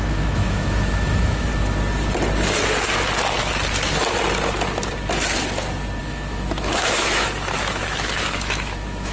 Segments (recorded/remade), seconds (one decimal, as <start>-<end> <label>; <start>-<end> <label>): 0.0-1.5 remade; 1.5-6.0 recorded; 6.0-9.1 remade